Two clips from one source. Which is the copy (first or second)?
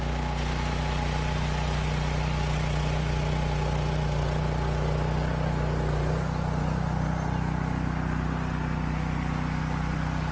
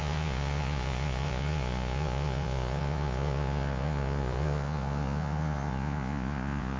second